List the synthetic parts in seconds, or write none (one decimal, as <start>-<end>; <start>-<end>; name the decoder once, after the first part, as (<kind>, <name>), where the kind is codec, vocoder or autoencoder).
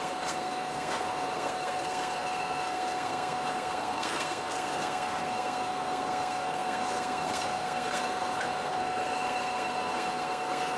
0.0-10.8 (codec, SNAC)